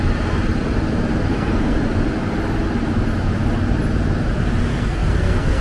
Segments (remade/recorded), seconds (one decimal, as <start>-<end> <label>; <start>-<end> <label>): 0.0-1.3 recorded; 1.3-1.8 remade; 1.8-4.7 recorded; 4.7-5.6 remade

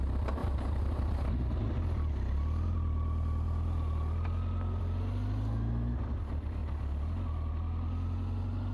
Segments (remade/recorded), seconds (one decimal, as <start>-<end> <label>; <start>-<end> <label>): 0.0-8.7 recorded